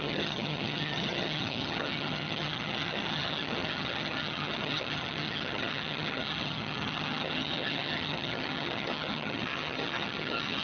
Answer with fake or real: fake